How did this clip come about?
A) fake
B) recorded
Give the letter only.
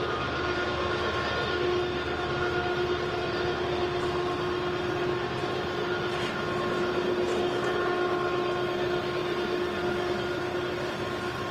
B